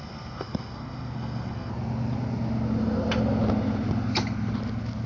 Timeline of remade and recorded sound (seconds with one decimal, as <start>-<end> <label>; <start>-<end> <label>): 0.0-1.7 remade; 1.7-5.1 recorded